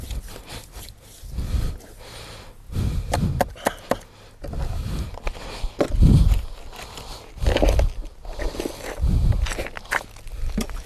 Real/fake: real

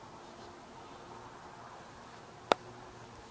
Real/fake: real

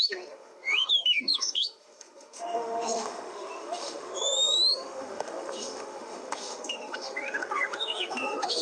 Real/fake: fake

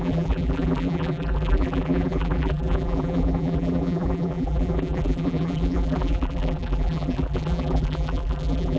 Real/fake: fake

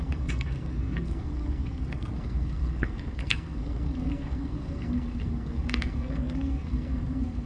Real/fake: fake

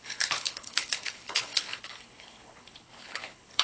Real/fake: fake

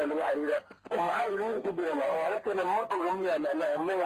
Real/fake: fake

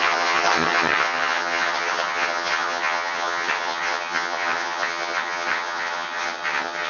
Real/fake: fake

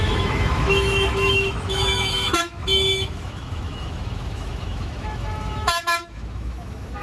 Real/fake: fake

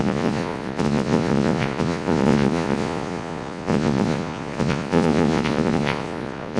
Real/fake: fake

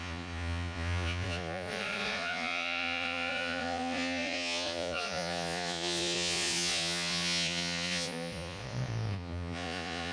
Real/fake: fake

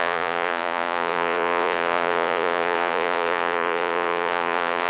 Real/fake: fake